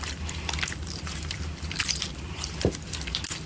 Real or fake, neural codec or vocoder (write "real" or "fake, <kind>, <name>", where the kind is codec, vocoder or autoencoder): real